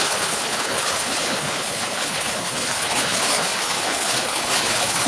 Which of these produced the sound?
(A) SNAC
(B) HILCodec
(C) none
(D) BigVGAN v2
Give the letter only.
B